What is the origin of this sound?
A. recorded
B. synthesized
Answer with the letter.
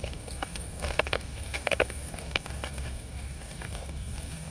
B